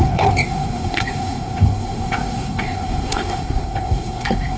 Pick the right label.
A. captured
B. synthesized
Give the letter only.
B